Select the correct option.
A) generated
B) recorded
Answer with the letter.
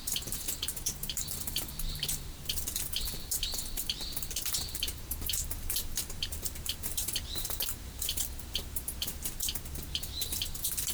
A